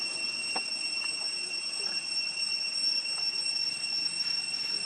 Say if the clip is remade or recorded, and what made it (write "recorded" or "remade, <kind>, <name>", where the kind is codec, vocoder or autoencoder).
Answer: recorded